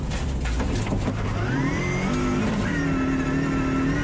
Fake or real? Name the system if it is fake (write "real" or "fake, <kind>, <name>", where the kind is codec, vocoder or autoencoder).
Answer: real